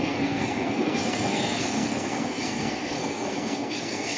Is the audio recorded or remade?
remade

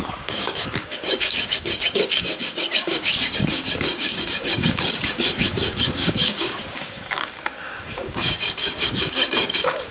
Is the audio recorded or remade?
remade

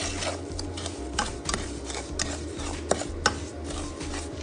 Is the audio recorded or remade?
recorded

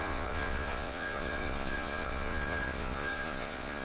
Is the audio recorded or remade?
remade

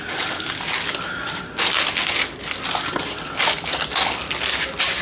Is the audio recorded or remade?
recorded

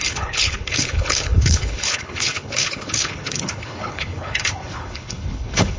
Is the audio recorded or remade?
remade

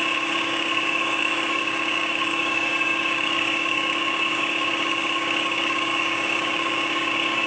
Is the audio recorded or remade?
remade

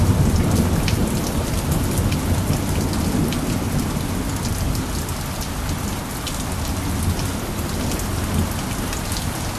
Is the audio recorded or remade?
recorded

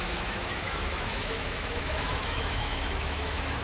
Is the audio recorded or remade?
remade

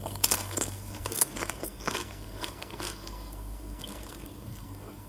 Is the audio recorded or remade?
remade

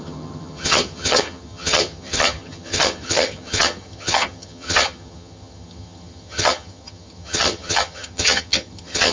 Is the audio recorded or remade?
remade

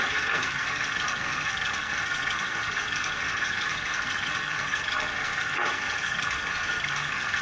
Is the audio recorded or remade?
remade